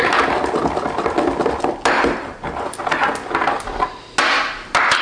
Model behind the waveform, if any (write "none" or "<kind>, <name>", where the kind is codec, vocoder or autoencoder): none